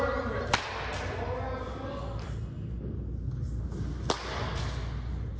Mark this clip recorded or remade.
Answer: recorded